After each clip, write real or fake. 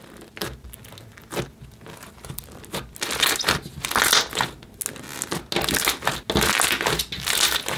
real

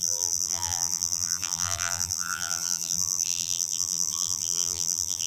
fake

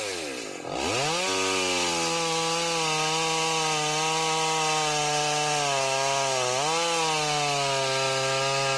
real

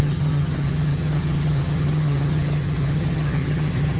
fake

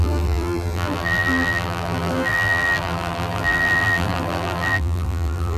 fake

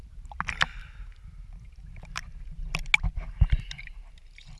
real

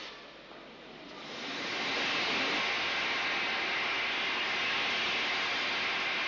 real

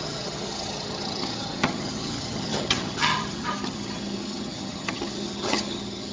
fake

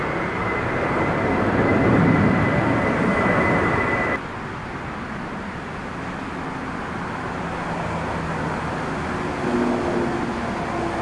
real